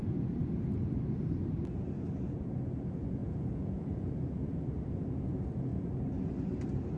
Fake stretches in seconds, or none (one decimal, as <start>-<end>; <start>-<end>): 3.2-4.1